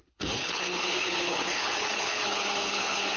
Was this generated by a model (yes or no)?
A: yes